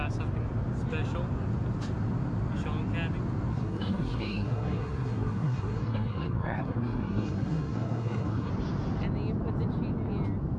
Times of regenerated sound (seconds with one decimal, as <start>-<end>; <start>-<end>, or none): 3.5-8.5